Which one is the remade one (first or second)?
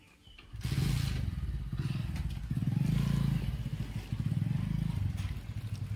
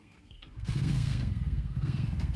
second